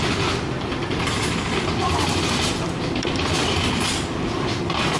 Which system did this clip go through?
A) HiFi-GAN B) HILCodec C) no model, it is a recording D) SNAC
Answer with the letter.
C